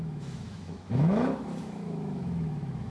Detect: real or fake fake